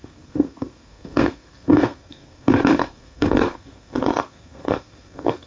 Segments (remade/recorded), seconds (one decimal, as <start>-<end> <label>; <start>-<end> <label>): 0.0-5.5 remade